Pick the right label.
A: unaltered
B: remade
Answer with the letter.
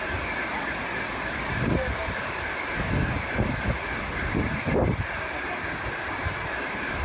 A